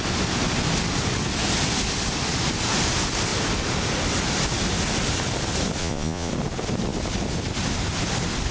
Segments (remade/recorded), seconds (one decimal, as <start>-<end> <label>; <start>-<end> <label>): 0.0-5.8 recorded; 5.8-6.3 remade; 6.3-8.5 recorded